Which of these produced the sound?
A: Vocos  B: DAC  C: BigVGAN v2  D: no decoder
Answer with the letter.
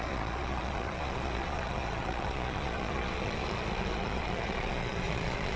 A